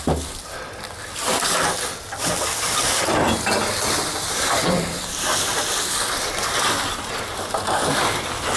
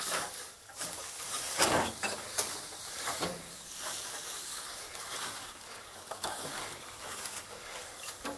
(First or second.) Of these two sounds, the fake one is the second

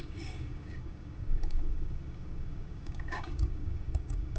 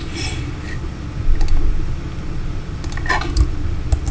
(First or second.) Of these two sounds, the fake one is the first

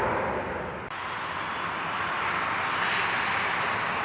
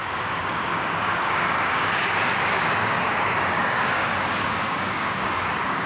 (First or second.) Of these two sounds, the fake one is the second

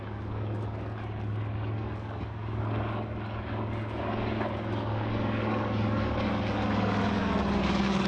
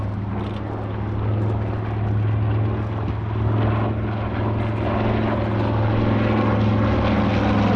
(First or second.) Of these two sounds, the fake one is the first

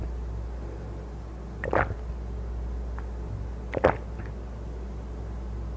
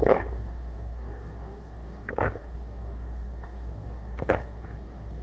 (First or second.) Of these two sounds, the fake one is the second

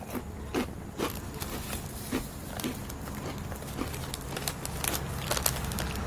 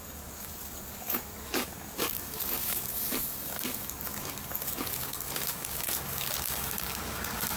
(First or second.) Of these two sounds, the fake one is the second